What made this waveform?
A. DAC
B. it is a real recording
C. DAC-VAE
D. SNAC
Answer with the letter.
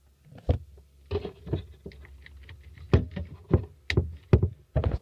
B